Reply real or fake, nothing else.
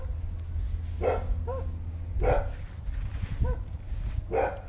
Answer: real